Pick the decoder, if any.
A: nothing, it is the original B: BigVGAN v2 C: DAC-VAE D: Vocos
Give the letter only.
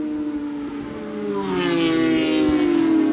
A